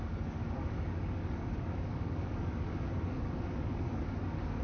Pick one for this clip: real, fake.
fake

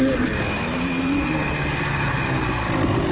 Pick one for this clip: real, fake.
real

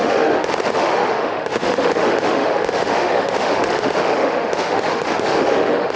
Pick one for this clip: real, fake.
fake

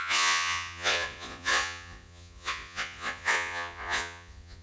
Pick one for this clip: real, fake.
fake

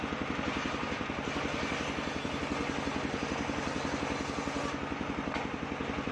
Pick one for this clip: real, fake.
real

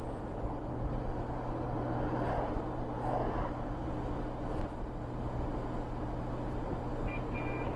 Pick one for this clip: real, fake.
real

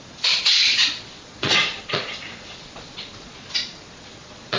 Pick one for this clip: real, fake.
fake